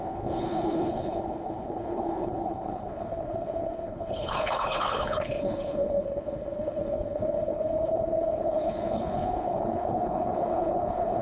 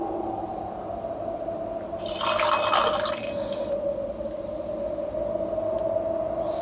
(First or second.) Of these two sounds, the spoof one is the first